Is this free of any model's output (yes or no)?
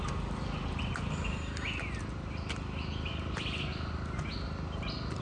yes